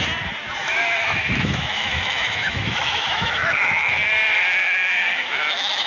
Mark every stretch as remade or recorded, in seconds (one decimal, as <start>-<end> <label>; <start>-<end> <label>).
0.0-0.6 recorded; 0.6-4.1 remade; 4.1-4.6 recorded; 4.6-5.9 remade